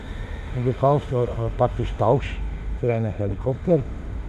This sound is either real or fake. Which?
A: fake